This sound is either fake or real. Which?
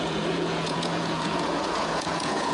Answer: fake